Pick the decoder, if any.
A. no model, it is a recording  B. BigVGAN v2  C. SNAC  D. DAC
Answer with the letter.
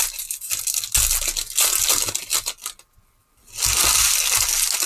A